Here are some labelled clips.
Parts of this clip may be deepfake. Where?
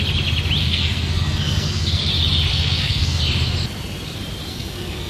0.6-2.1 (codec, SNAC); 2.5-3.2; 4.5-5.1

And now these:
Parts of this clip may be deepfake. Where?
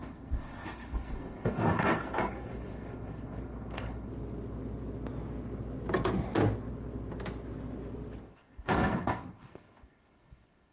0.0-4.1 (codec, SNAC); 8.2-10.7